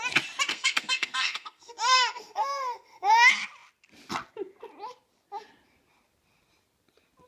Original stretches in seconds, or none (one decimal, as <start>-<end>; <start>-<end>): 0.0-0.5; 3.1-7.3